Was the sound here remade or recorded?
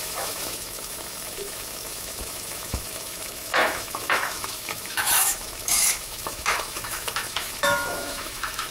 remade